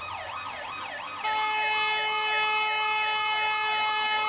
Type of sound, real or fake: real